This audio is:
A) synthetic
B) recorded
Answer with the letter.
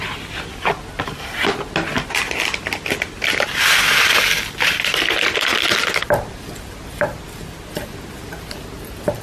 B